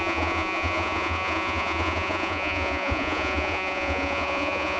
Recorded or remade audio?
remade